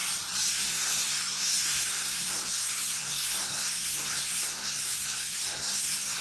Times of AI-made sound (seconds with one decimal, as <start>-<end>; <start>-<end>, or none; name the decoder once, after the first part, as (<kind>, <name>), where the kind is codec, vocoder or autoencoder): 0.5-6.2 (codec, SNAC)